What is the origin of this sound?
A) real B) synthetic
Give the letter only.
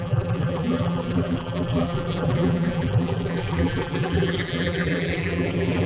B